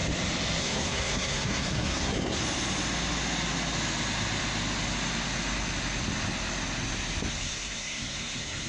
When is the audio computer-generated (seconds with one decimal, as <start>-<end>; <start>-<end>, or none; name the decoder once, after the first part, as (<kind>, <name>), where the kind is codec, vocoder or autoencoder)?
0.6-2.4 (codec, SNAC); 7.3-8.7

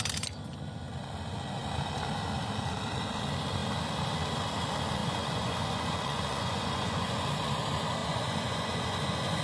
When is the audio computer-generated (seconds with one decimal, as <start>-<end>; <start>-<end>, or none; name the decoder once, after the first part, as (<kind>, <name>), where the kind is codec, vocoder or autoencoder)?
5.0-7.5 (vocoder, Vocos); 8.0-9.4

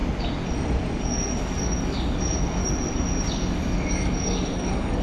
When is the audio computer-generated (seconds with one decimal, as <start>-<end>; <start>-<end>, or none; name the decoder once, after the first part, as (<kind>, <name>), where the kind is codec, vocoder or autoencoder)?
1.0-2.6 (codec, DAC); 3.3-5.0